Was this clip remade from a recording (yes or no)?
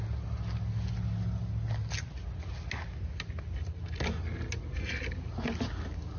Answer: no